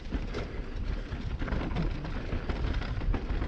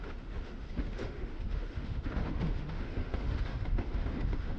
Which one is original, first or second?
first